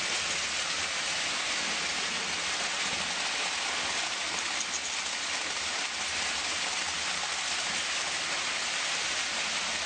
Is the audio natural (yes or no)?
yes